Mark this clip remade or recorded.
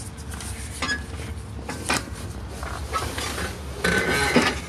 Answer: recorded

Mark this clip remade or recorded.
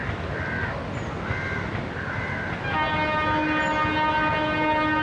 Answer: recorded